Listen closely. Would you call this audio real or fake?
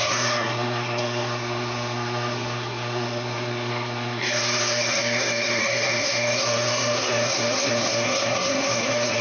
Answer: fake